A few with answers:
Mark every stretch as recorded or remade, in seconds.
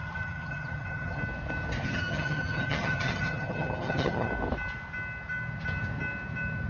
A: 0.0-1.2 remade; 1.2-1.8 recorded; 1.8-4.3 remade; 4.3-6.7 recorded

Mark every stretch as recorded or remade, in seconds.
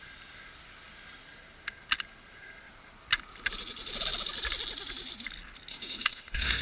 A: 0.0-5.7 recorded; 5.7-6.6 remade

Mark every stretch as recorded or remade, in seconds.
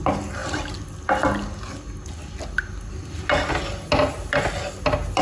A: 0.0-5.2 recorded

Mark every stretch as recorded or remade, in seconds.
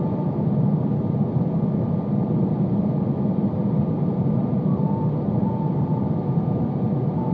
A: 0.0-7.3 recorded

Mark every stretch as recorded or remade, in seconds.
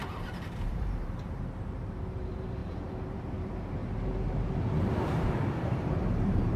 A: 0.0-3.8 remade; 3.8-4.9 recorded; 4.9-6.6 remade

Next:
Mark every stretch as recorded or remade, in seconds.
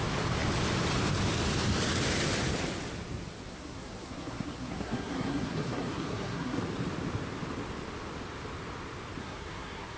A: 0.0-3.5 recorded; 3.5-6.6 remade; 6.6-9.2 recorded; 9.2-10.0 remade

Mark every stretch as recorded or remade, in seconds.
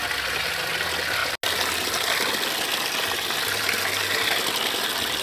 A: 0.0-5.2 recorded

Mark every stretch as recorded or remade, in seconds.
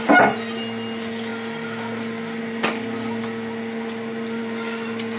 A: 0.0-5.2 recorded